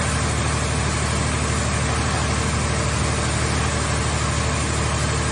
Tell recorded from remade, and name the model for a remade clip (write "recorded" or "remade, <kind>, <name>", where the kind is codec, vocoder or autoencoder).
recorded